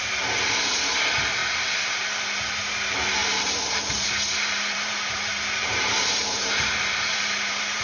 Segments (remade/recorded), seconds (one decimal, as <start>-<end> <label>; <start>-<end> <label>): 0.0-3.2 recorded; 3.2-7.8 remade